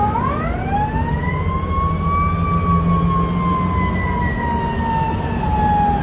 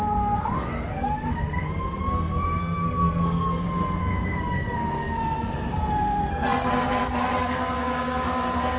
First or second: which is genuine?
first